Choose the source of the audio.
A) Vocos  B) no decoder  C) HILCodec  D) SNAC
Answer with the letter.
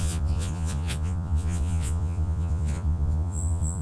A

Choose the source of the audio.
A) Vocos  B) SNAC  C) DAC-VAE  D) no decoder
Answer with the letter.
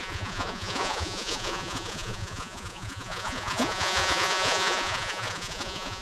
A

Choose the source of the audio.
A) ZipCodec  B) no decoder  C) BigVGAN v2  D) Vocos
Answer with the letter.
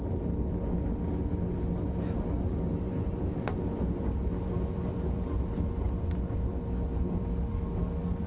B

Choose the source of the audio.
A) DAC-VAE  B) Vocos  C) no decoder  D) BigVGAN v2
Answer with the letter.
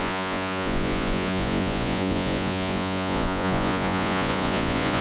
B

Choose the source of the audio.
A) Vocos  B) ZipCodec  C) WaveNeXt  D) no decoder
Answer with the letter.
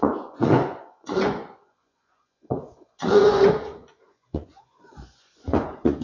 A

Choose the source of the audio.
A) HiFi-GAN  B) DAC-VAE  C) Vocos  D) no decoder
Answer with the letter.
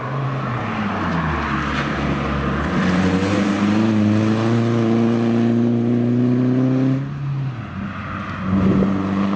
D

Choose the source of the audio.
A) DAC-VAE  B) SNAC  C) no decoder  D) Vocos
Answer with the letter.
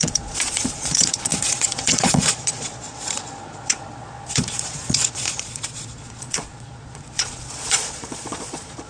D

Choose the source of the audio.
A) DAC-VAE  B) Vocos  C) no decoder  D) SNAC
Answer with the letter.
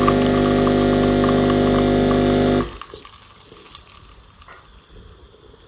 C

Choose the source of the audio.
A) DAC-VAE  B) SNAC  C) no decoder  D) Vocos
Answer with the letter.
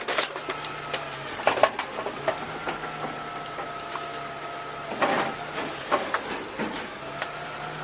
C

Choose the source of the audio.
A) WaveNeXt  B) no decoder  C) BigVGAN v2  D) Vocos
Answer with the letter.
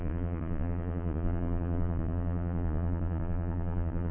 D